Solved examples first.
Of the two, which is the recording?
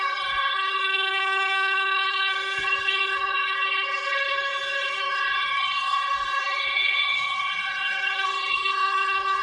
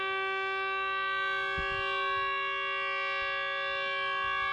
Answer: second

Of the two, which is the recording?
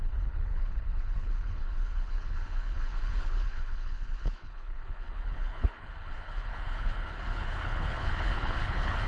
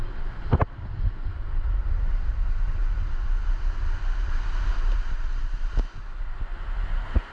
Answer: second